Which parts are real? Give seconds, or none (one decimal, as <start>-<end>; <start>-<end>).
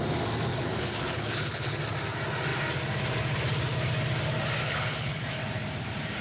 0.0-0.5; 1.8-4.6; 5.2-6.2